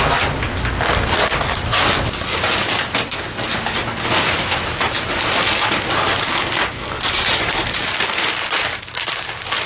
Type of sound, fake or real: real